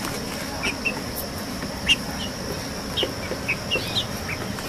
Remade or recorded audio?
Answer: recorded